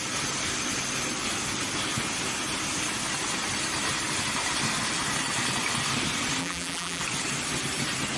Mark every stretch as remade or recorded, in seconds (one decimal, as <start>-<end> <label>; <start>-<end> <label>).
0.0-6.4 recorded; 6.4-7.0 remade; 7.0-8.2 recorded